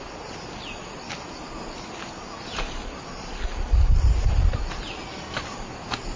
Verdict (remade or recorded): recorded